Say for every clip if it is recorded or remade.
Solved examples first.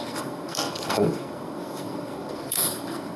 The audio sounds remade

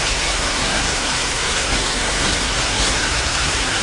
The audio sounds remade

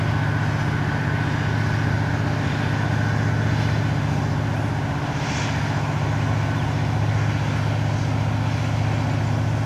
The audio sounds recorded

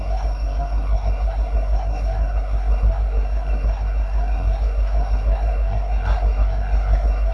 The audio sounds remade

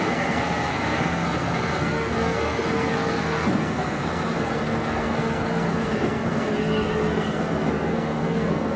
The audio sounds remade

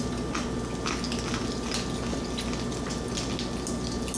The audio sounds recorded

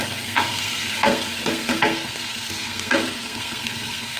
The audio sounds remade